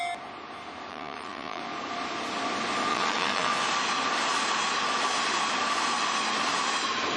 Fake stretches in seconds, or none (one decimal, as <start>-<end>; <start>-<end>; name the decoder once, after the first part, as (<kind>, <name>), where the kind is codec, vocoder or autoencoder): 0.9-1.6 (vocoder, Vocos); 2.9-3.5